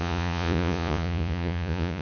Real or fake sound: fake